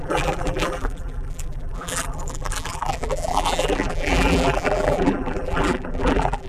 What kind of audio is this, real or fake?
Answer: fake